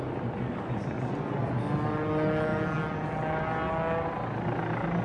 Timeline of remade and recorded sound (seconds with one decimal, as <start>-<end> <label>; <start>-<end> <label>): 0.0-5.0 recorded